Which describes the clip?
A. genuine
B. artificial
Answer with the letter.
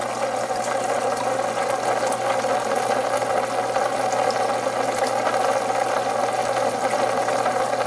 A